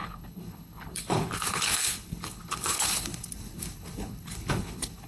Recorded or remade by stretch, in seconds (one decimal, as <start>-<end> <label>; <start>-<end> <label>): 0.0-5.1 remade